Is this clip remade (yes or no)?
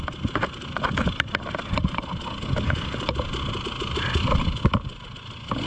no